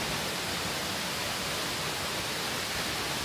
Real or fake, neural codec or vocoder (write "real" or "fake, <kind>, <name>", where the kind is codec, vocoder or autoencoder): real